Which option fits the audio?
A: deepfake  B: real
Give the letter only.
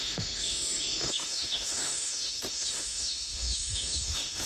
A